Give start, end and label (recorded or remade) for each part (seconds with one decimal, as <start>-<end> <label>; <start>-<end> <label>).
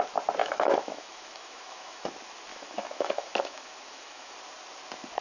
0.0-0.4 recorded; 0.4-2.1 remade; 2.1-2.5 recorded; 2.5-4.3 remade; 4.3-5.2 recorded